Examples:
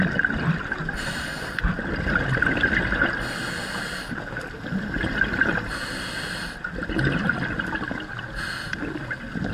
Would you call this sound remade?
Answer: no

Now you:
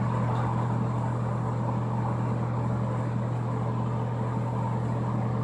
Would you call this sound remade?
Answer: yes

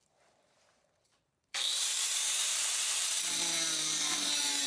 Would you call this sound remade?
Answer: yes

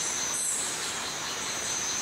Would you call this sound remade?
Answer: yes